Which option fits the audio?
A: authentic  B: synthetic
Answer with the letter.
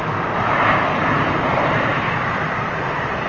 B